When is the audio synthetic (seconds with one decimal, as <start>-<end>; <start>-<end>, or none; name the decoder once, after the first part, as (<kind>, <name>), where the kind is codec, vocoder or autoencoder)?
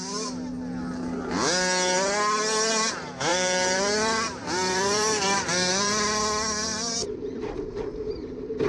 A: 3.3-6.2 (vocoder, BigVGAN v2); 7.0-8.7